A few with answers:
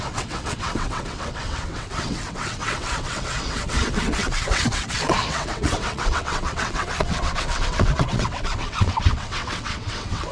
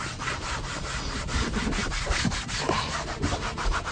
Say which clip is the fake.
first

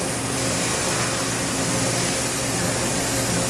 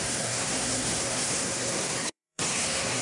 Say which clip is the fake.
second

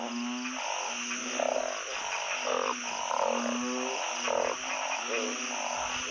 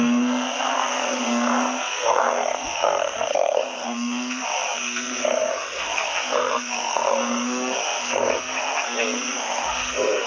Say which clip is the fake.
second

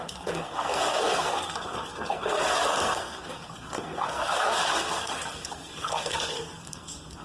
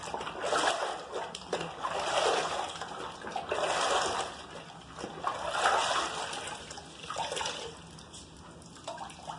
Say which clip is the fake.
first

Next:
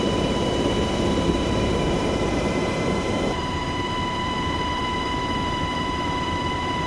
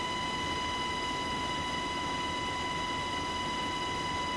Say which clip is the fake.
first